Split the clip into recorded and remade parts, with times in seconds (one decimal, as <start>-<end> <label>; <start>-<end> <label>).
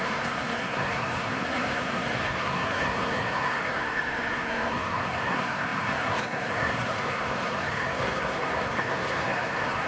0.0-9.9 remade